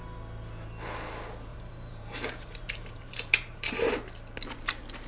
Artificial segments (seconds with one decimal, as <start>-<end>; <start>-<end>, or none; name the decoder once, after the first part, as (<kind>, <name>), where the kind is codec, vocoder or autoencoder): 1.5-3.9 (vocoder, BigVGAN v2)